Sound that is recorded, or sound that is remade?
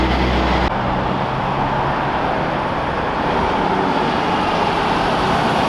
recorded